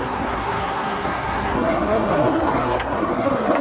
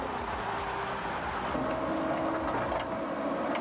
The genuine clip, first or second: second